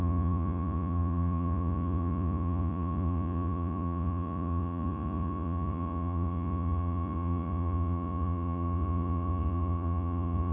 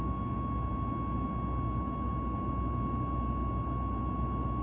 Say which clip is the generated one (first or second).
first